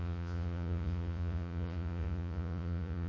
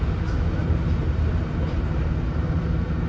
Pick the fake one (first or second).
first